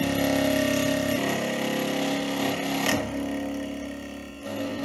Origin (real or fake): real